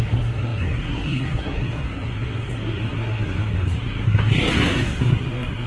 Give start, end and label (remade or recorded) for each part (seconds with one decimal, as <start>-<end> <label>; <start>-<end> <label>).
0.0-5.7 remade